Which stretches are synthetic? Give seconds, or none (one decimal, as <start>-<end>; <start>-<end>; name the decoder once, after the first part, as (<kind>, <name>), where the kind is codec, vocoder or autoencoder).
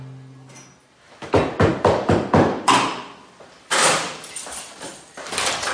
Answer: none